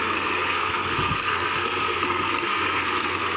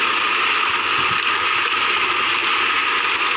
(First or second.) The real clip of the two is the second